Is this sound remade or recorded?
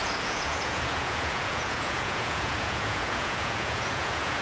remade